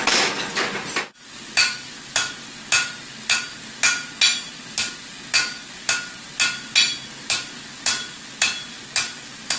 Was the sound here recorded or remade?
recorded